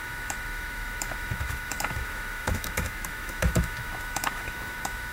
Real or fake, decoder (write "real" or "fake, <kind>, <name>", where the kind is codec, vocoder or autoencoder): fake, autoencoder, DAC-VAE